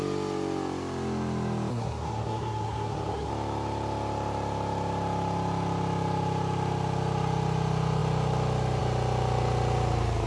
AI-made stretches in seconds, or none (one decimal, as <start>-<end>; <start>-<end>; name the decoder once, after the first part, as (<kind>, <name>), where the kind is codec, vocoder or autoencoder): 1.7-3.3 (codec, SNAC)